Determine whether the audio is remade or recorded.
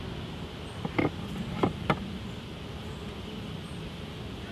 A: recorded